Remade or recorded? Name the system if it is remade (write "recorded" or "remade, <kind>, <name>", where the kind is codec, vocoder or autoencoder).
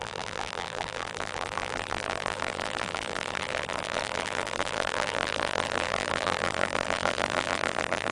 remade, vocoder, BigVGAN v2